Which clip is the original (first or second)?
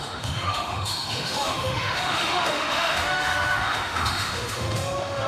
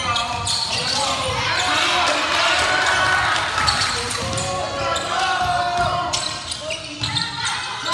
second